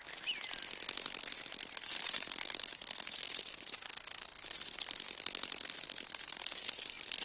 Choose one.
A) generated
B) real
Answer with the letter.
B